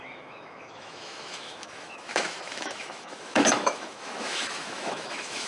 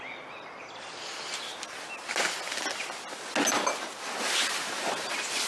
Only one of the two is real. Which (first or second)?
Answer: second